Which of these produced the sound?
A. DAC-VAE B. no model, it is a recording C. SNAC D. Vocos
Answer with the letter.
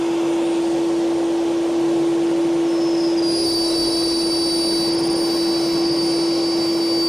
B